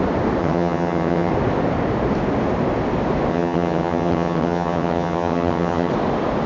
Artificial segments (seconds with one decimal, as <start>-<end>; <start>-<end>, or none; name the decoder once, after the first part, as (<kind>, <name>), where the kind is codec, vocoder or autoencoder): 0.4-1.3 (vocoder, HiFi-GAN); 3.3-5.9